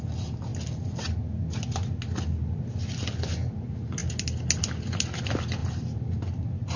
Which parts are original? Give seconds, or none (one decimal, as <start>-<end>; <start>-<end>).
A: 0.0-5.6